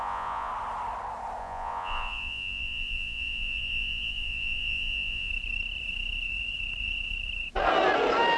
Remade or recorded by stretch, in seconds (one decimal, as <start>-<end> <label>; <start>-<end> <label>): 0.0-0.5 remade; 0.5-1.4 recorded; 1.4-5.3 remade; 5.3-8.4 recorded